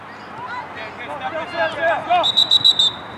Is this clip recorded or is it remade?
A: recorded